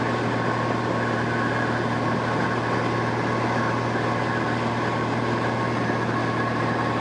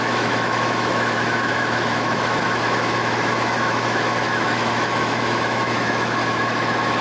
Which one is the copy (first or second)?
second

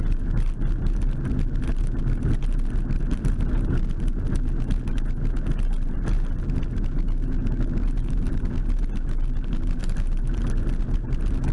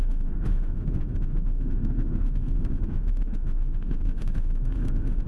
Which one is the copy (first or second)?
second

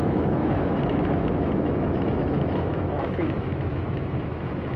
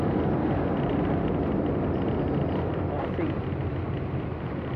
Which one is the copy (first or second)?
first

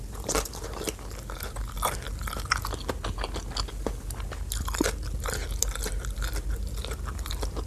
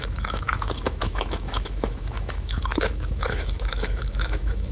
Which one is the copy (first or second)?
second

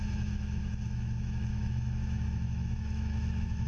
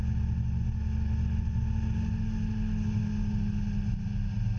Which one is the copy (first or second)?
first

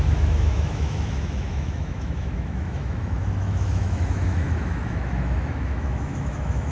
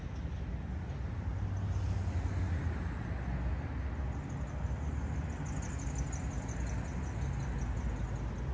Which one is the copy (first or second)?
first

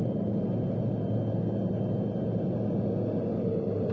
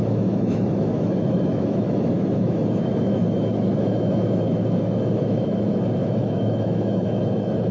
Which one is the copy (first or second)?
second